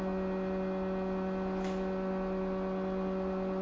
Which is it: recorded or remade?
recorded